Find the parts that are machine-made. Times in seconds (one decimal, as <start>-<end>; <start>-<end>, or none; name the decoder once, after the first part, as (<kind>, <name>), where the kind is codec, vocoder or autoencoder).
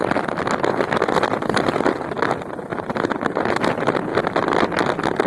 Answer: 2.7-3.6 (vocoder, BigVGAN v2)